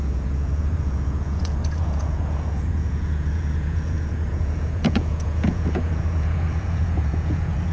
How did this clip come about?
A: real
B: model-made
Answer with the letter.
B